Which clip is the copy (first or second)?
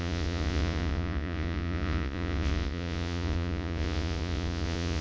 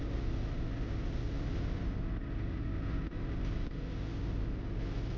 first